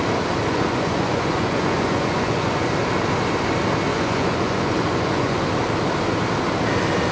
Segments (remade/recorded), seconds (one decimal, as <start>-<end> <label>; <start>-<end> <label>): 0.0-0.5 recorded; 0.5-2.7 remade; 2.7-3.9 recorded; 3.9-5.4 remade; 5.4-7.1 recorded